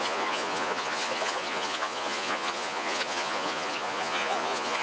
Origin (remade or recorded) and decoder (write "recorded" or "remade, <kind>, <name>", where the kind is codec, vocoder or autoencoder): remade, vocoder, Vocos